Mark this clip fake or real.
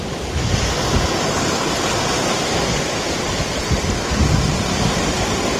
real